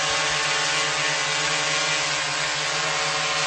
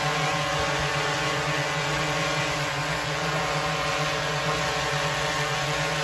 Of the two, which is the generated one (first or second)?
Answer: second